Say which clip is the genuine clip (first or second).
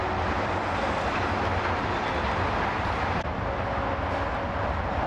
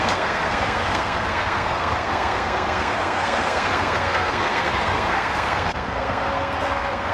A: first